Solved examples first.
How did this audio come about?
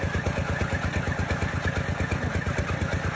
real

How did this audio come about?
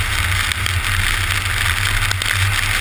real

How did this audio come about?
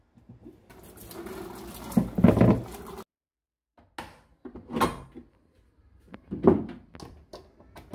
real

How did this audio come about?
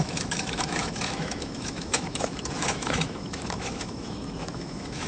fake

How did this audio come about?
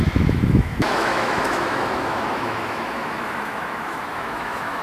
fake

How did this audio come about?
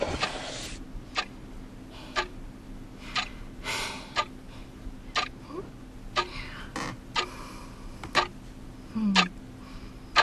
real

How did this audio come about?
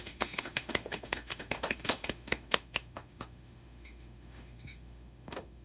fake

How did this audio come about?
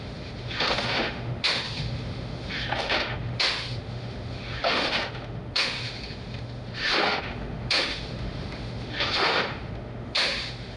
fake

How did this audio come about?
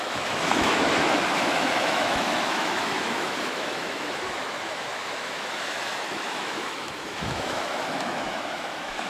fake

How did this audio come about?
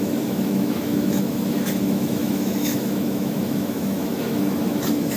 fake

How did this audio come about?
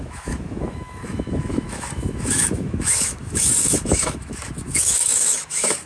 fake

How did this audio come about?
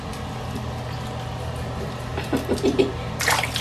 real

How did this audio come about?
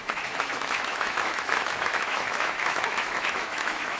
fake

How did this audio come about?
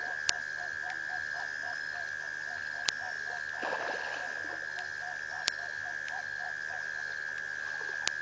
real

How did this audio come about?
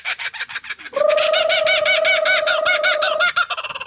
real